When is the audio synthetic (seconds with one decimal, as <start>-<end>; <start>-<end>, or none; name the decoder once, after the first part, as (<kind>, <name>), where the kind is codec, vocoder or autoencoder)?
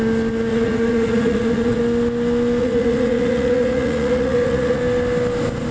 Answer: 0.5-1.8 (vocoder, Vocos); 2.6-4.8